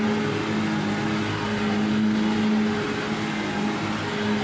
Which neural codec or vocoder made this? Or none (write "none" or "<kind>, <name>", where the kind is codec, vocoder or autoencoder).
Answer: none